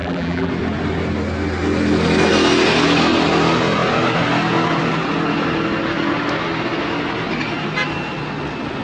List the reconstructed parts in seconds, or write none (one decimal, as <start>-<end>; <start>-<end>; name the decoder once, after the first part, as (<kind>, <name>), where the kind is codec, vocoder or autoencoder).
0.0-0.5 (vocoder, BigVGAN v2)